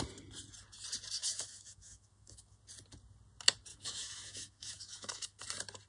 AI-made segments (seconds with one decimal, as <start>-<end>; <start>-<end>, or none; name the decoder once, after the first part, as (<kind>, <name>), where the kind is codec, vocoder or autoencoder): 1.2-2.6 (autoencoder, DAC-VAE); 3.7-5.4